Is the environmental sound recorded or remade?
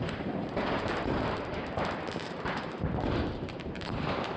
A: remade